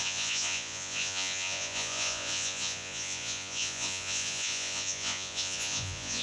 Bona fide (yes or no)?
no